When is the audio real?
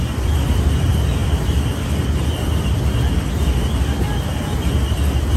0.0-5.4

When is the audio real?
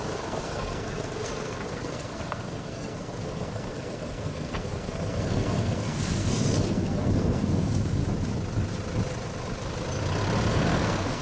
8.0-10.5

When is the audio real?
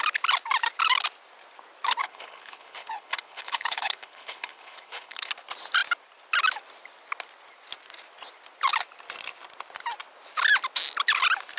0.0-2.0; 5.3-11.6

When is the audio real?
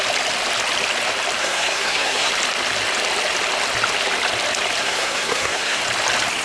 0.0-1.4; 2.3-4.8; 5.8-6.4